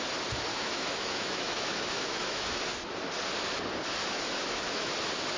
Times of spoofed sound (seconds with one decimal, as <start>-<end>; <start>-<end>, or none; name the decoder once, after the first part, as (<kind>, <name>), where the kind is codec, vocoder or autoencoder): 0.5-2.6 (autoencoder, DAC-VAE); 4.0-4.9